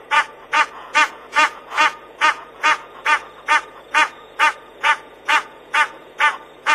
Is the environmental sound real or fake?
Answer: fake